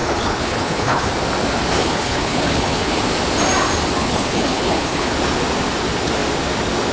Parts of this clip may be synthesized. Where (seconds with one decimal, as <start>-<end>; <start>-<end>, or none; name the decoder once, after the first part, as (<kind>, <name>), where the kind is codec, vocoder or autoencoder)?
0.0-1.1 (codec, HILCodec); 1.8-3.0; 4.0-5.1